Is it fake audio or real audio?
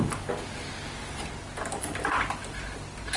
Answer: real